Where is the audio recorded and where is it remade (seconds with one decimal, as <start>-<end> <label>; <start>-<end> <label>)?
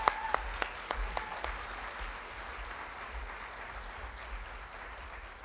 0.0-5.4 recorded